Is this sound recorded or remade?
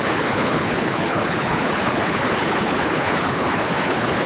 remade